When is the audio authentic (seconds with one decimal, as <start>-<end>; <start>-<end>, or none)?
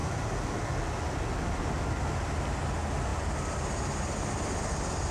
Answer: 0.0-5.1